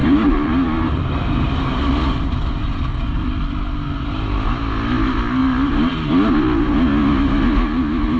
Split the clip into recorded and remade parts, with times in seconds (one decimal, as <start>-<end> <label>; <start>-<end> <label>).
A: 0.0-1.7 remade; 1.7-2.9 recorded; 2.9-3.4 remade; 3.4-8.2 recorded